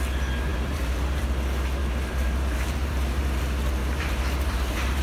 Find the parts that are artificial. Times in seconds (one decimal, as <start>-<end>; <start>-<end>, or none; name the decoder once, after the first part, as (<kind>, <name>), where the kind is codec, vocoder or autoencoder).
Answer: 0.5-1.2 (vocoder, BigVGAN v2); 1.8-3.4; 3.8-5.0